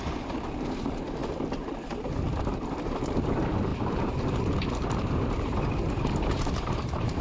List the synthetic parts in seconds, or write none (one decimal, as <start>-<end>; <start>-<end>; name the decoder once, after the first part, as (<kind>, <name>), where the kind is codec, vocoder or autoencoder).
0.0-1.2 (vocoder, BigVGAN v2); 2.4-7.2